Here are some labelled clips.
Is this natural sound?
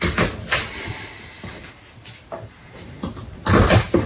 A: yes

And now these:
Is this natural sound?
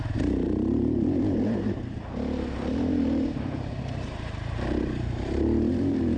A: no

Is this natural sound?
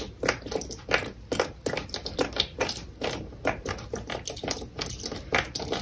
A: yes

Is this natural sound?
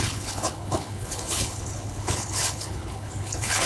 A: no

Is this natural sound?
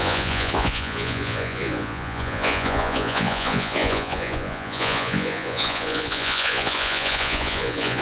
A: no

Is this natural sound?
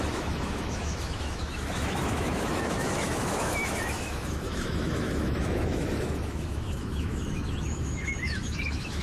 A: no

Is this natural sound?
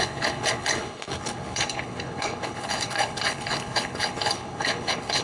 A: no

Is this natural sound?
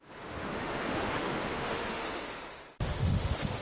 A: no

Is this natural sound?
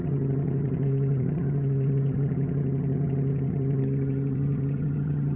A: no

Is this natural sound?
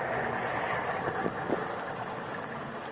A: yes